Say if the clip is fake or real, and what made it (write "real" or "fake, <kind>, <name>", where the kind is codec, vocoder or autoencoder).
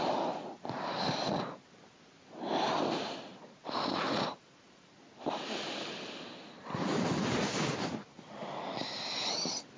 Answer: real